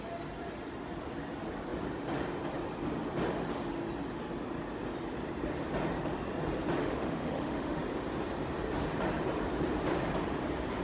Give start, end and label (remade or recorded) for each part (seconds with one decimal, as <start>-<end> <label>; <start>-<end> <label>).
0.0-6.8 recorded; 6.8-7.8 remade; 7.8-10.8 recorded